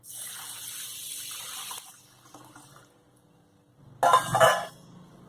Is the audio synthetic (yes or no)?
no